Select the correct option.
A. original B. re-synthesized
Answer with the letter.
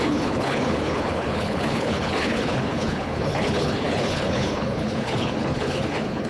B